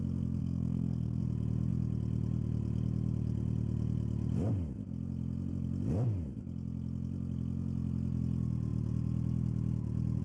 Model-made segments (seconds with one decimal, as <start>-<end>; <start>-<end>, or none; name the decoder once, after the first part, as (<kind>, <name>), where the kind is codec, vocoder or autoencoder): 0.4-1.2 (codec, SNAC)